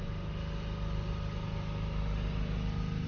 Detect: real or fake real